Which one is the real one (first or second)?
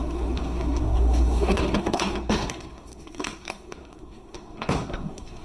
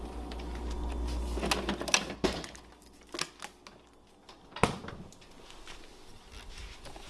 second